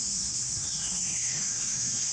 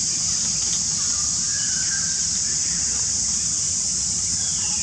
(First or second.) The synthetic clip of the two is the first